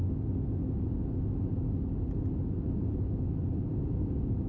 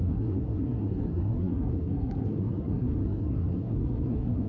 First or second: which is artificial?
second